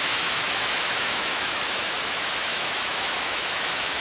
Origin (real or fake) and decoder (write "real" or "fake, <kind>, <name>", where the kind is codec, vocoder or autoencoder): fake, autoencoder, DAC-VAE